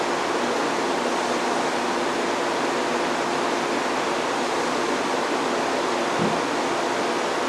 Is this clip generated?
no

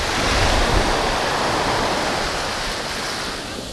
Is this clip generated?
no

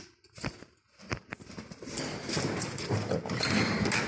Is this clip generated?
no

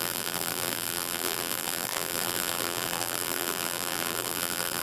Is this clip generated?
yes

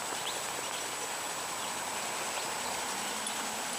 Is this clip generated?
no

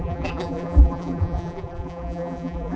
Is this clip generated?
yes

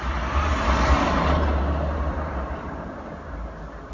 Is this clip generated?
yes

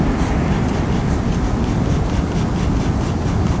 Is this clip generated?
yes